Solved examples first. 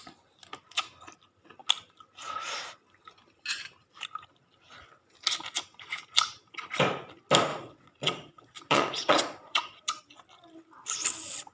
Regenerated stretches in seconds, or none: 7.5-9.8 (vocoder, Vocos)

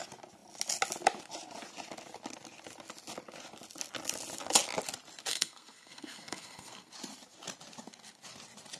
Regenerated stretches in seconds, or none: 5.3-6.9 (codec, SNAC)

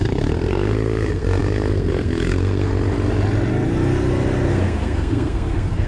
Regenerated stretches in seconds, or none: 0.0-2.7 (codec, SNAC); 4.5-5.9

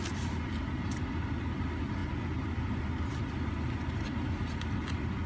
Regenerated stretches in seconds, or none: none

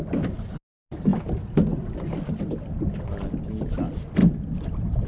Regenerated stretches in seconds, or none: none

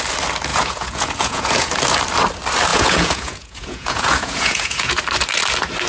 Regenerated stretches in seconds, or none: 0.5-1.7 (vocoder, Vocos); 2.7-5.0